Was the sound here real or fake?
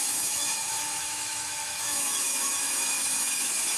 fake